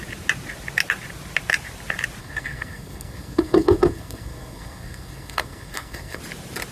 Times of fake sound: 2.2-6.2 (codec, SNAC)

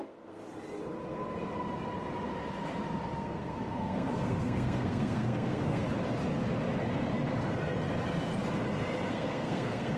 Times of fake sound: 0.0-0.4 (codec, SNAC); 3.2-5.8; 9.1-10.0

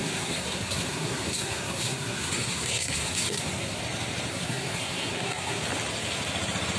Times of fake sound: 0.0-3.8 (codec, SNAC); 4.3-5.6

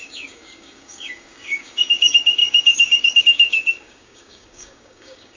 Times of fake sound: 0.0-5.4 (codec, DAC)

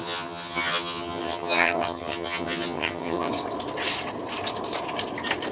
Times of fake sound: 0.0-3.3 (vocoder, HiFi-GAN)

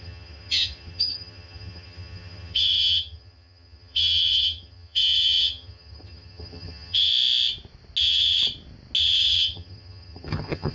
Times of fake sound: 0.0-7.1 (vocoder, HiFi-GAN); 8.0-8.4; 9.0-10.7

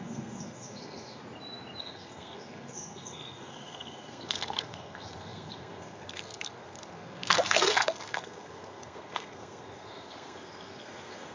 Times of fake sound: 0.0-1.2 (codec, SNAC); 1.8-11.3

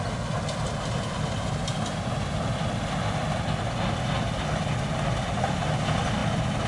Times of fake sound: none